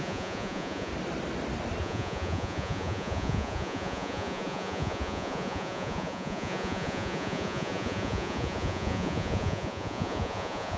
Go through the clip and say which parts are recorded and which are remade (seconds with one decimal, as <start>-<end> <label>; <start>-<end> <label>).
0.0-0.9 remade; 0.9-1.8 recorded; 1.8-10.8 remade